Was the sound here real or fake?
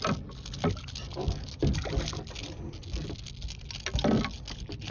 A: real